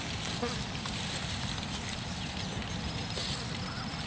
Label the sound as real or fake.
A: fake